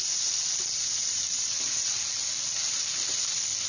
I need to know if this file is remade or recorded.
recorded